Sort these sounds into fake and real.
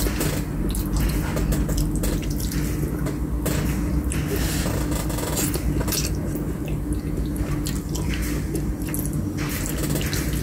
real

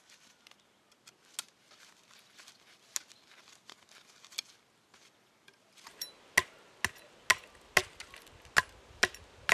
real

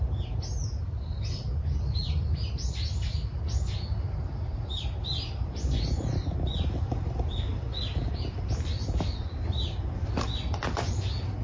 real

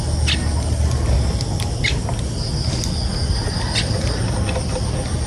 real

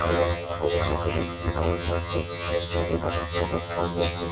fake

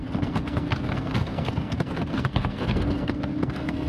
fake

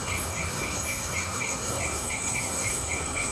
fake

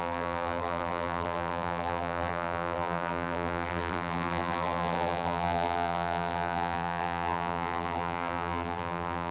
fake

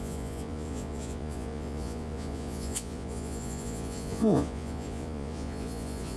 fake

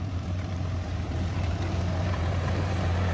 fake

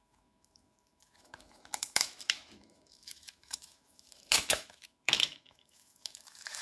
fake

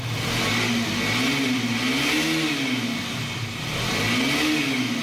real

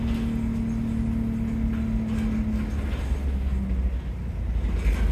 real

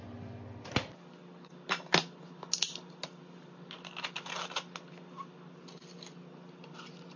real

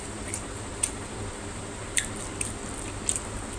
real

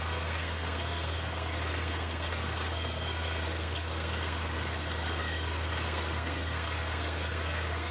fake